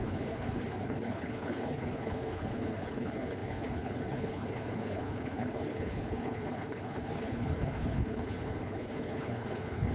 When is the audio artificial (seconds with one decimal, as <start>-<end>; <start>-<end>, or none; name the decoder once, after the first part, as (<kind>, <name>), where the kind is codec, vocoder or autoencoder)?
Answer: 0.0-9.9 (codec, HILCodec)